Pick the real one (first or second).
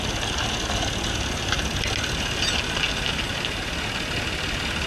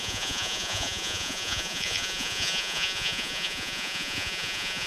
first